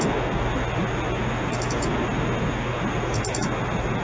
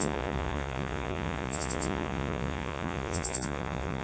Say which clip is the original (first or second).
first